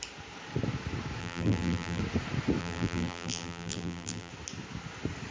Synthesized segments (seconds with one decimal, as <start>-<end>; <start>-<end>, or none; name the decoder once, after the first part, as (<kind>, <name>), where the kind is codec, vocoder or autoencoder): 1.2-2.0 (vocoder, BigVGAN v2); 2.6-4.3

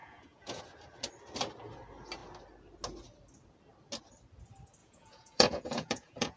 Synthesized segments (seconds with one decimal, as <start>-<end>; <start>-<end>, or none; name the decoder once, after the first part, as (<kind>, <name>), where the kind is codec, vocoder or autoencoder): 0.0-0.6 (vocoder, Vocos); 4.8-6.4

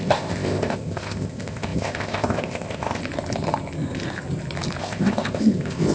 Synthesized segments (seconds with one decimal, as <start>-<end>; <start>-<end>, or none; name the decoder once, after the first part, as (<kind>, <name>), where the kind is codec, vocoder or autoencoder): 0.0-3.0 (codec, ZipCodec); 4.8-5.9

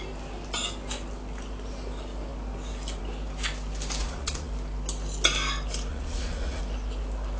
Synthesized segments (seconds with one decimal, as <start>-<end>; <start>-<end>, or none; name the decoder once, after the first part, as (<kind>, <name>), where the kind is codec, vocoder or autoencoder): 4.0-4.5 (vocoder, Vocos); 5.9-6.6

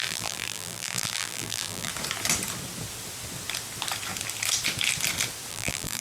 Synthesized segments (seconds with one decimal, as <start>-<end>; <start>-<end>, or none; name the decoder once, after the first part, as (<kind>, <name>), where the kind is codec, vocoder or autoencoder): 0.0-1.9 (vocoder, BigVGAN v2); 5.5-6.0

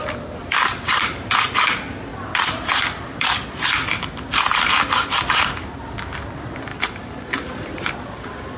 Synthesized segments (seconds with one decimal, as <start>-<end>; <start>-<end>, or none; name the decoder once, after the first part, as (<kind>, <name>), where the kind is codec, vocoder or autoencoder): 0.4-1.3 (vocoder, BigVGAN v2)

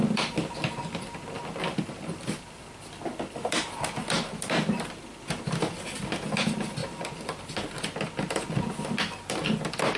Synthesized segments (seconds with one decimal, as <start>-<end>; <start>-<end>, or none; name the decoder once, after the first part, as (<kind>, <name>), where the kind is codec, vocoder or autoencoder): 6.8-7.8 (vocoder, BigVGAN v2)